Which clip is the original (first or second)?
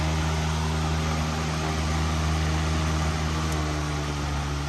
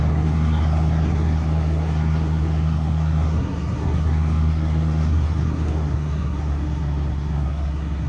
first